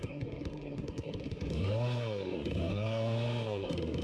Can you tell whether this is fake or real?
fake